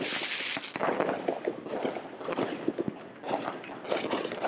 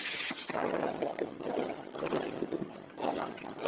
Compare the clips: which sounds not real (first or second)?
second